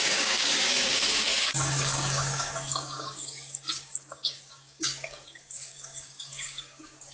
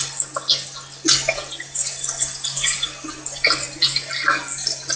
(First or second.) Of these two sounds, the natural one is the second